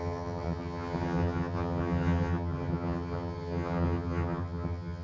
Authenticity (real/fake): fake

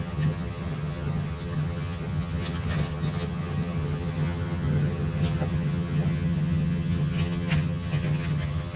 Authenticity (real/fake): fake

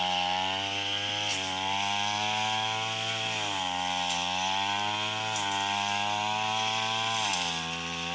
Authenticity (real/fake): real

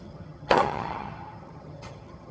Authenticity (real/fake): fake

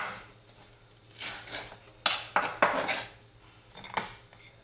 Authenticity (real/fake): real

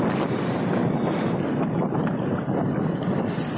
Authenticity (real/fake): real